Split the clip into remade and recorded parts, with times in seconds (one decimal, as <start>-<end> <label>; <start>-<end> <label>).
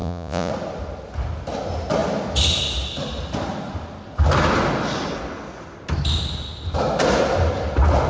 0.0-0.5 remade; 0.5-8.1 recorded